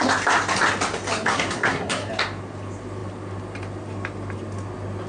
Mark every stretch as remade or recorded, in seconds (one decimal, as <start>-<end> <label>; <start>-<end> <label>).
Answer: 0.0-1.3 recorded; 1.3-2.1 remade; 2.1-5.1 recorded